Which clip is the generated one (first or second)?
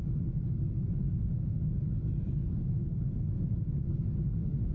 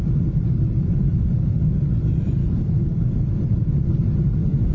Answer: second